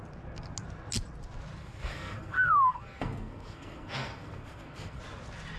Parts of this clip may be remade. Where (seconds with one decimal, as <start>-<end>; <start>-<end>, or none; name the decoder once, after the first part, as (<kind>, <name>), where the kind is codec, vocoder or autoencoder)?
1.6-5.0 (codec, SNAC)